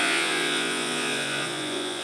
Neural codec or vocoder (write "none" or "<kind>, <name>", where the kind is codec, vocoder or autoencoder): vocoder, Vocos